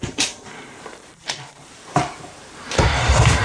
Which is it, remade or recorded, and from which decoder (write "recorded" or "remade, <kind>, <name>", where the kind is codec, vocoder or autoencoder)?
remade, vocoder, BigVGAN v2